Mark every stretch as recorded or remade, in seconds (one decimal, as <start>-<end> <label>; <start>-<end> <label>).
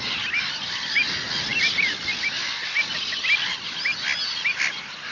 0.0-5.1 recorded